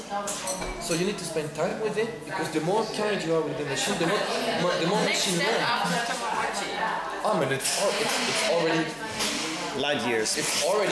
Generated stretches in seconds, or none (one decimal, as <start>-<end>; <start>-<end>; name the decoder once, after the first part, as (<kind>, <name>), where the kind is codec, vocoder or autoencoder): 1.7-2.8 (vocoder, Vocos)

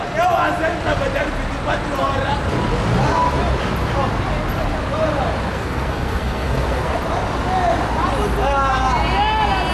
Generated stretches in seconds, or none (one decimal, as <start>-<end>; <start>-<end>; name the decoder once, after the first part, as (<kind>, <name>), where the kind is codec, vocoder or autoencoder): 5.5-6.9 (codec, SNAC)

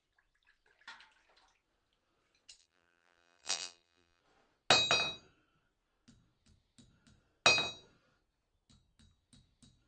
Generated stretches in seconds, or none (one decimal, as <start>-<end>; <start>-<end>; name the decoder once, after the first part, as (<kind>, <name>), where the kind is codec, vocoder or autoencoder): 2.6-4.2 (vocoder, BigVGAN v2)

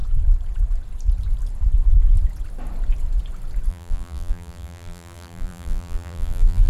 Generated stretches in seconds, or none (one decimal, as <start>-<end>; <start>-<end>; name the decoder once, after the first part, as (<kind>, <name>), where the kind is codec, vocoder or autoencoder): 3.7-6.7 (vocoder, BigVGAN v2)

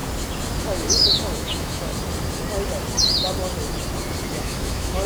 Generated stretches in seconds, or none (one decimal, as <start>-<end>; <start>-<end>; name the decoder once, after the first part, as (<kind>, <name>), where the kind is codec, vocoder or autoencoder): 0.6-1.9 (autoencoder, DAC-VAE); 4.4-5.1

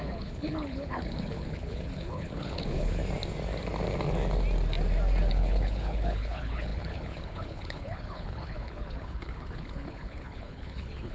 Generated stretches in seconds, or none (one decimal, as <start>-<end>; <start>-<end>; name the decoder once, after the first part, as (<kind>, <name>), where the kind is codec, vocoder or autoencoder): 0.0-3.0 (codec, HILCodec); 5.3-11.1

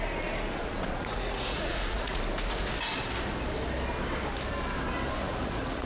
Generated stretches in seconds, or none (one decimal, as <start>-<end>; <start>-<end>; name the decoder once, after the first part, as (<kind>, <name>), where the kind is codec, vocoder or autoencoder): 0.6-2.2 (vocoder, Vocos); 5.2-5.9